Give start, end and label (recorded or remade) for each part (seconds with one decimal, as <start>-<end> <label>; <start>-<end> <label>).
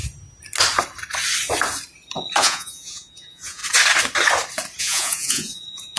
0.0-2.4 recorded; 2.4-3.6 remade; 3.6-4.8 recorded; 4.8-6.0 remade